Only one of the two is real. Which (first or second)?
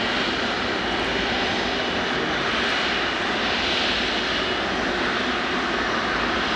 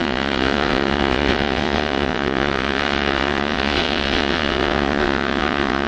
first